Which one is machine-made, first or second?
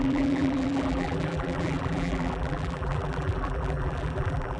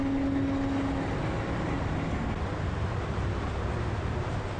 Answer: first